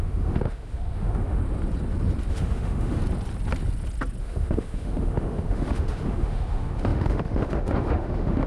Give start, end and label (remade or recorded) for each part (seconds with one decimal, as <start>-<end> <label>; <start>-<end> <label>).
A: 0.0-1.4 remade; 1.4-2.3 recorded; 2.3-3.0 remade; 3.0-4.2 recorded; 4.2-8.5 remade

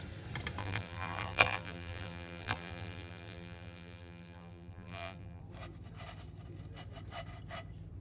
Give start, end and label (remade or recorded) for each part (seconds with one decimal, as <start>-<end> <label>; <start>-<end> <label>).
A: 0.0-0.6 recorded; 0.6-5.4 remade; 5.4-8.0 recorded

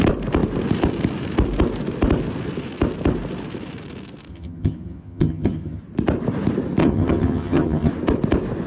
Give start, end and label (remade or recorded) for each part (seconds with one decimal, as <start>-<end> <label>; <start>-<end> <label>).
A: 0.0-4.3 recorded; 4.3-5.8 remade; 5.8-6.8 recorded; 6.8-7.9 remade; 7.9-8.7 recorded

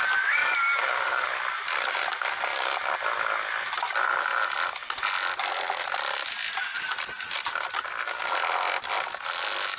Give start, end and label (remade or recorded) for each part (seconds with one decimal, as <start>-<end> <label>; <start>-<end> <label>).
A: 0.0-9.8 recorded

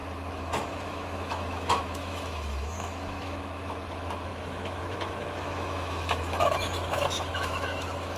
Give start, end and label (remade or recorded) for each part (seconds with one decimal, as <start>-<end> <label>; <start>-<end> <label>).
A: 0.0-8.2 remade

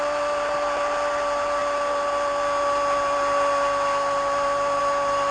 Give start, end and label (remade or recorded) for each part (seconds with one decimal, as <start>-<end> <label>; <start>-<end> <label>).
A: 0.0-5.3 recorded

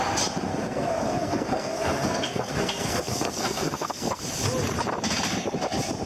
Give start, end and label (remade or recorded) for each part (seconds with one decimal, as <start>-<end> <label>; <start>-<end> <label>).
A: 0.0-0.5 recorded; 0.5-4.2 remade; 4.2-6.1 recorded

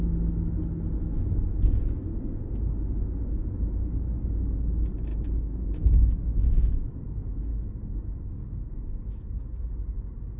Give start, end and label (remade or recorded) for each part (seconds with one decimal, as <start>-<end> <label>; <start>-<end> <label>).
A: 0.0-1.4 recorded; 1.4-3.2 remade; 3.2-5.1 recorded; 5.1-6.3 remade; 6.3-7.5 recorded; 7.5-9.6 remade; 9.6-10.4 recorded